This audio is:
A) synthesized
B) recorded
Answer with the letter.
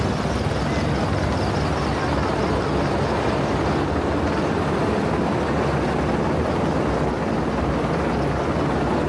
B